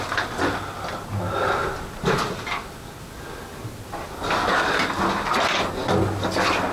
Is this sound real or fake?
real